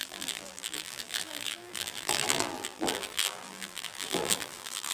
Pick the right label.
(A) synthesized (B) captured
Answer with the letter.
A